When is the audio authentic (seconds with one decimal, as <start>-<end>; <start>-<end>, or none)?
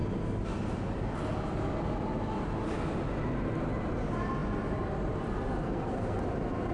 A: 0.0-5.6; 6.2-6.7